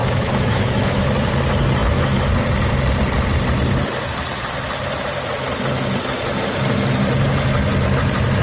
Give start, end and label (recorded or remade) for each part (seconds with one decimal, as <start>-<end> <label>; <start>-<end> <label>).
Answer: 0.0-1.0 remade; 1.0-1.8 recorded; 1.8-2.3 remade; 2.3-8.4 recorded